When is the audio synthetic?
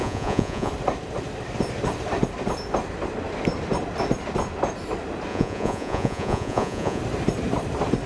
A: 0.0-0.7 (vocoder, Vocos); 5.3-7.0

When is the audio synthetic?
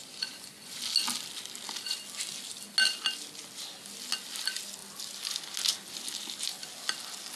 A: 0.0-0.8 (vocoder, Vocos)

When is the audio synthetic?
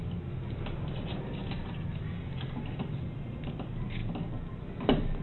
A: none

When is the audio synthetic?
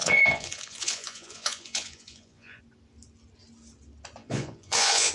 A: 0.0-2.6 (vocoder, Vocos); 4.2-5.1